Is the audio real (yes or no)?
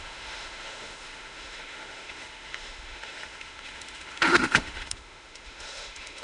no